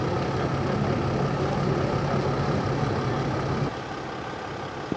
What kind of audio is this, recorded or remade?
recorded